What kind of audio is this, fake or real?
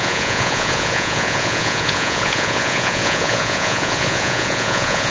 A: fake